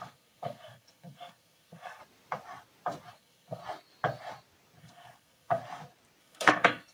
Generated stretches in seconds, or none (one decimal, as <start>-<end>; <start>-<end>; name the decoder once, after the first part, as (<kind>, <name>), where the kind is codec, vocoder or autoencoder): 0.0-2.0 (codec, SNAC); 3.1-3.6; 4.8-5.6; 6.2-6.9